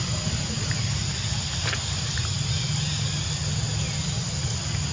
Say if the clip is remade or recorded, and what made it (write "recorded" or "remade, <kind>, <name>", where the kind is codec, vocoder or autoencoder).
recorded